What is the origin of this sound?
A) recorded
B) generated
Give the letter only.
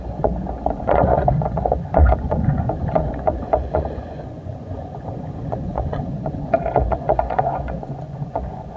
B